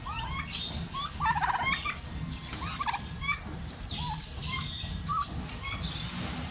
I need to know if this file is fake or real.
real